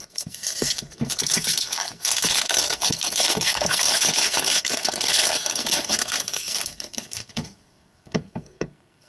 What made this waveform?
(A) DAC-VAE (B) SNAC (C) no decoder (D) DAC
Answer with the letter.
B